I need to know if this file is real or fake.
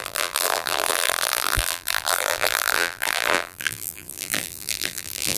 fake